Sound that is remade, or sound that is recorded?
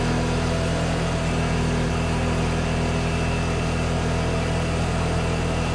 recorded